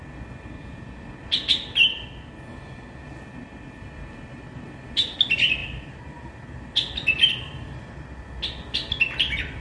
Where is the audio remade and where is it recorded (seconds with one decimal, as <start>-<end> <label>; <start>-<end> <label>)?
0.0-9.6 recorded